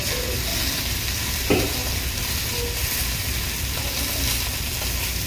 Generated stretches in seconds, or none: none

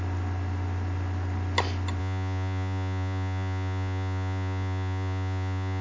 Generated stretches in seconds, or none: 2.0-5.8 (vocoder, Vocos)

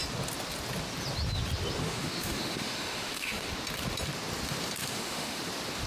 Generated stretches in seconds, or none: 1.8-3.5 (autoencoder, DAC-VAE); 4.8-5.4